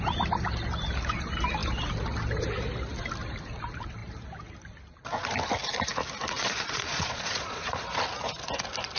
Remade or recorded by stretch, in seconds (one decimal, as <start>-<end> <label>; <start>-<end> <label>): 0.0-6.4 recorded; 6.4-8.0 remade; 8.0-9.0 recorded